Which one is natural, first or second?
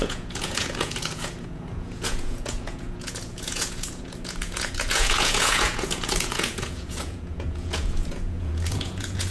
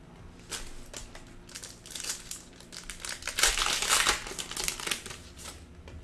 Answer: second